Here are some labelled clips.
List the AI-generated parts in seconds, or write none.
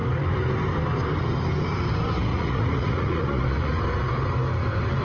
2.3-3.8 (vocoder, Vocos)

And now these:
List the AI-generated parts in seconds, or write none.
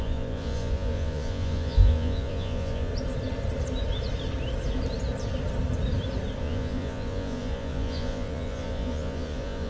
0.0-2.9 (vocoder, Vocos); 6.4-9.7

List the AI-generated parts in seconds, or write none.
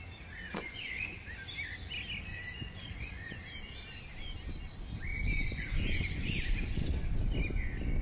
0.5-1.2 (vocoder, Vocos); 2.3-3.4; 5.1-6.7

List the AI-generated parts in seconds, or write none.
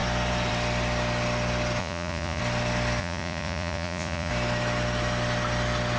1.8-2.4 (vocoder, Vocos); 3.0-4.3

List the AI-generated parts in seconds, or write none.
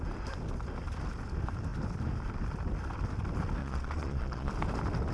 3.6-4.5 (vocoder, Vocos)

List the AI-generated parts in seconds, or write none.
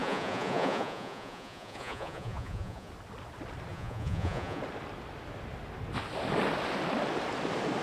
0.0-2.9 (vocoder, Vocos); 3.7-4.6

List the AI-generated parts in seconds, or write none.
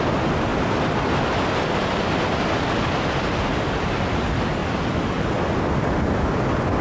none